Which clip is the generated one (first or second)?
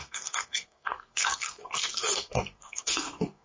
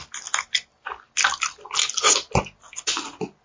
first